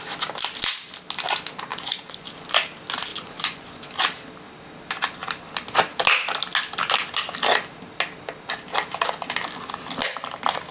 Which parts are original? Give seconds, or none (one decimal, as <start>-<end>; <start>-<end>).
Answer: 0.0-1.7; 2.3-3.1; 3.8-10.7